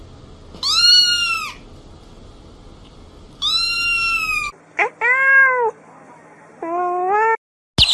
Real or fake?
real